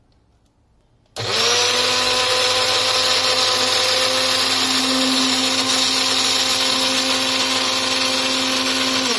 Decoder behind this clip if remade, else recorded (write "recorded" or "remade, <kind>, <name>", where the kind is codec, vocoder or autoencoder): recorded